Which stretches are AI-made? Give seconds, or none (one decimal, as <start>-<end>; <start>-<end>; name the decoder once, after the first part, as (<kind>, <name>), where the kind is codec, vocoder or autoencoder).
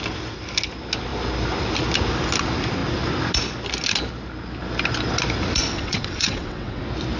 5.7-6.8 (vocoder, WaveNeXt)